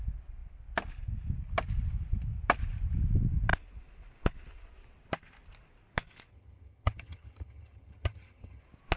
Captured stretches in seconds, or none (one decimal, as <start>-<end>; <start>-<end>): 0.0-6.3; 8.6-9.0